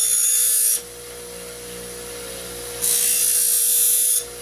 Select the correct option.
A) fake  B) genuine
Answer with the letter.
B